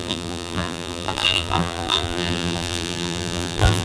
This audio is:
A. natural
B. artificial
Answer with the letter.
B